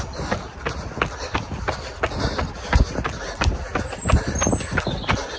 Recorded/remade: recorded